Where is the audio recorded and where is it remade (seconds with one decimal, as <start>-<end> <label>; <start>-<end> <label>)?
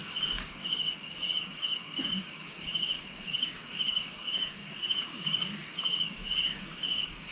0.0-7.3 remade